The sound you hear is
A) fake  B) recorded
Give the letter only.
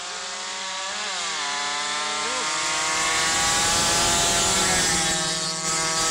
B